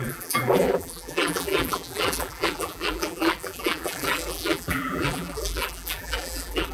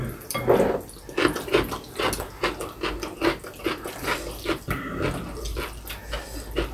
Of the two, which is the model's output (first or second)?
first